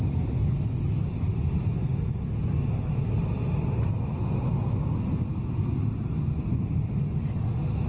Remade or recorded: recorded